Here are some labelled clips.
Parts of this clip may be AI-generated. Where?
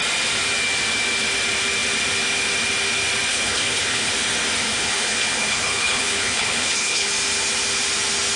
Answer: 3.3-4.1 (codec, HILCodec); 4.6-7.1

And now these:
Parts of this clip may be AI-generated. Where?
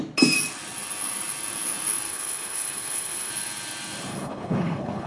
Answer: 2.1-3.3 (codec, HILCodec); 4.1-5.1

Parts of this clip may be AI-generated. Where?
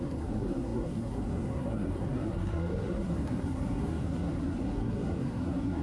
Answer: 0.0-5.8 (codec, SNAC)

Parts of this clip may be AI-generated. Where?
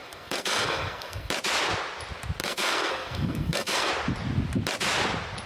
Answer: 0.0-1.3 (codec, SNAC); 2.4-3.9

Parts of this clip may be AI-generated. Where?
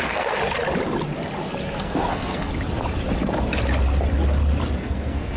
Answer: 0.0-0.4 (codec, SNAC); 1.8-2.5; 4.8-5.4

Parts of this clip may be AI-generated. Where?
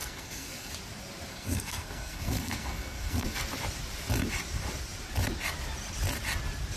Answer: 0.0-0.7 (codec, SNAC); 1.3-3.4